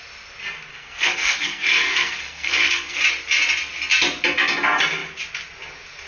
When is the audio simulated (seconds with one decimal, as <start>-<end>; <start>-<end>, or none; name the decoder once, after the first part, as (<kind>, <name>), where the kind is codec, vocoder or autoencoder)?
0.7-3.0 (codec, SNAC)

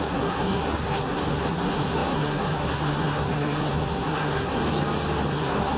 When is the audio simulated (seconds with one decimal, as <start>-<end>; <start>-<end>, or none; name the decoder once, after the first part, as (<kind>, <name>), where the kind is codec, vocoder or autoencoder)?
0.0-4.6 (codec, SNAC); 5.3-5.8

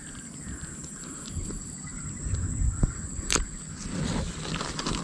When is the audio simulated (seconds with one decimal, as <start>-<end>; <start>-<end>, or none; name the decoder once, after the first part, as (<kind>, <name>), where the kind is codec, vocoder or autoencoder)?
none

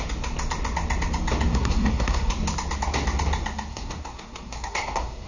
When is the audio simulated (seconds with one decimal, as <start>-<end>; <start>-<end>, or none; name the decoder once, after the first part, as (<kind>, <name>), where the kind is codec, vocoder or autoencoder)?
1.5-2.3 (codec, SNAC); 3.7-5.3

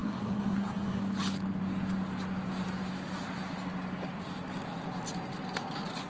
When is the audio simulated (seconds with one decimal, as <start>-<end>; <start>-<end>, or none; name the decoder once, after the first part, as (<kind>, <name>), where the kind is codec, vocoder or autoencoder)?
0.0-1.0 (codec, SNAC)